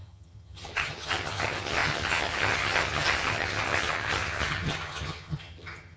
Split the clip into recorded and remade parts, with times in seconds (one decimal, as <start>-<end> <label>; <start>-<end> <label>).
0.0-6.0 remade